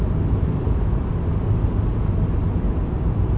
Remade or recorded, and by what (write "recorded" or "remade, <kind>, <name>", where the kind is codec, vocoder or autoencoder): remade, vocoder, BigVGAN v2